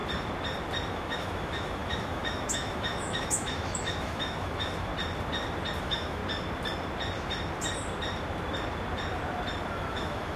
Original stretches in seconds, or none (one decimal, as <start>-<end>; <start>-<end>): 0.0-0.9; 4.9-5.8; 6.2-9.7